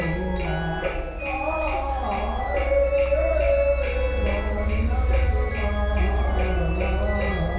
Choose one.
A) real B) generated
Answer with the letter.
A